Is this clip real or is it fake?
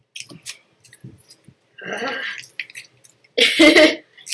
real